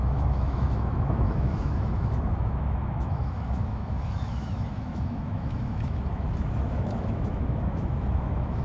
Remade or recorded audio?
remade